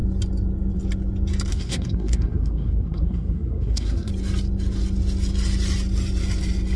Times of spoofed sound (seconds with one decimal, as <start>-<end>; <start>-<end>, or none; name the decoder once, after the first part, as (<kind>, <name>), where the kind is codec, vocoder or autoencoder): 1.5-4.1 (codec, SNAC)